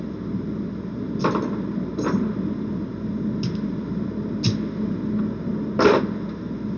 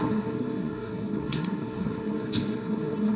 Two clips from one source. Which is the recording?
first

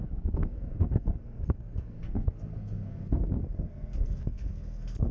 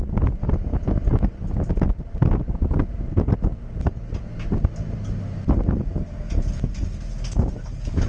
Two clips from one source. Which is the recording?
second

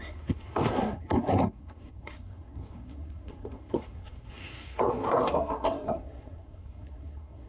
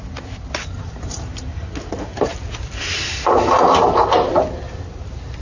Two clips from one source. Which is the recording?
second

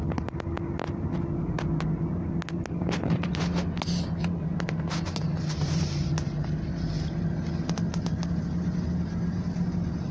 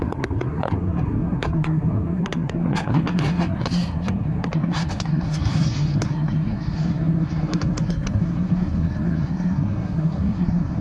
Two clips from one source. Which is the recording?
first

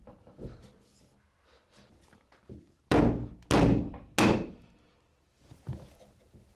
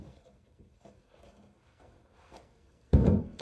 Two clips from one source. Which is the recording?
first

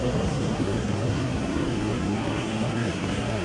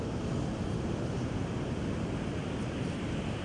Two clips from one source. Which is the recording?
second